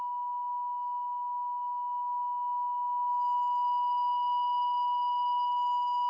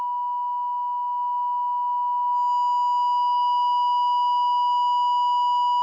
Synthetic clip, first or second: first